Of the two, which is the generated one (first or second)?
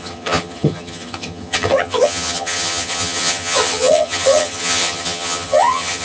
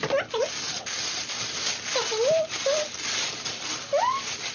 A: first